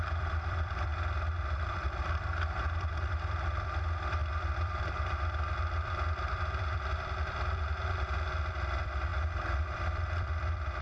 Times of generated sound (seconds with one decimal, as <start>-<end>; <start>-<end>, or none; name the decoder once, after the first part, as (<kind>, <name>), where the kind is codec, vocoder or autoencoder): 0.0-10.8 (vocoder, BigVGAN v2)